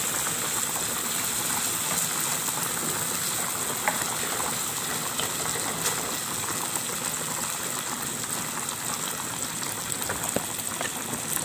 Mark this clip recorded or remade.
recorded